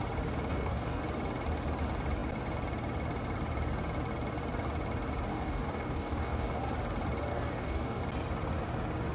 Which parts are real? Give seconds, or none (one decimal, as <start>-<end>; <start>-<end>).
0.0-0.5; 1.0-5.3; 6.6-7.3; 8.0-9.1